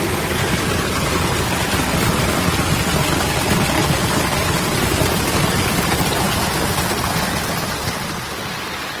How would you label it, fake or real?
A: real